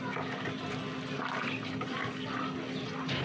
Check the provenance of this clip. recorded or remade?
recorded